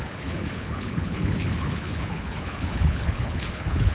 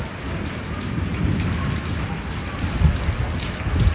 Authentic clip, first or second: second